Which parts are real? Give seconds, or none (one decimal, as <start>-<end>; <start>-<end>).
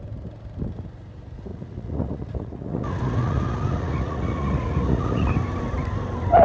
0.0-1.5; 5.3-6.4